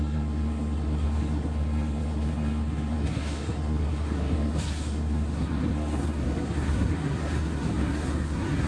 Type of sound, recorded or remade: remade